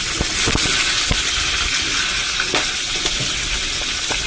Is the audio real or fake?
real